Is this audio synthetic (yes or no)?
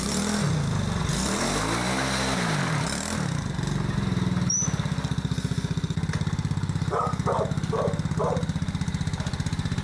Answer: no